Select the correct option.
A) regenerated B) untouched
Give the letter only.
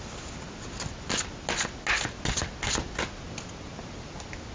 B